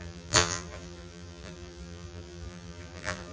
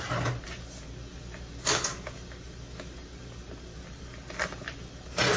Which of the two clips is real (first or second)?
second